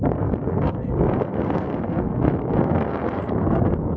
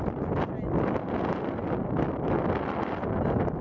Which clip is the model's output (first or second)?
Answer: first